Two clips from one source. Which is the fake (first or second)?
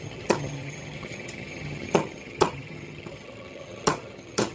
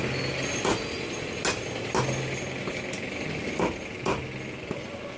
first